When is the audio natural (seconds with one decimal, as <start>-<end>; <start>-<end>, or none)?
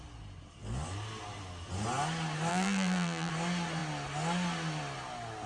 0.0-2.5; 3.3-5.5